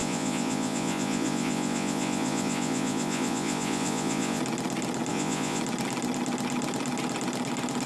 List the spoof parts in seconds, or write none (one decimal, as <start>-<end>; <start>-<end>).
0.0-4.4; 5.1-5.6